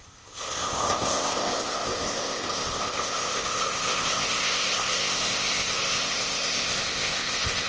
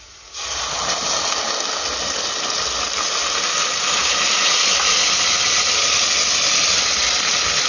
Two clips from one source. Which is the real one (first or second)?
second